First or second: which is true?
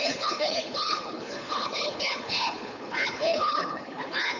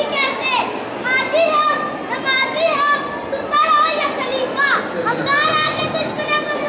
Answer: second